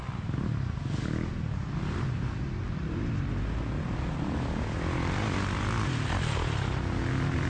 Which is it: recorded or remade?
recorded